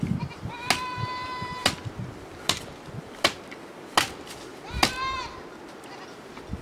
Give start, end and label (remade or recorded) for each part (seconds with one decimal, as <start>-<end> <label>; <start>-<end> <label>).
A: 0.0-6.6 recorded